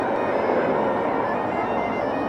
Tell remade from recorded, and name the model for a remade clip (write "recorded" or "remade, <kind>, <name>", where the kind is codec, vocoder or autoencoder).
recorded